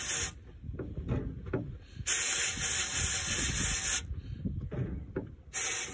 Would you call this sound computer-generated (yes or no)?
no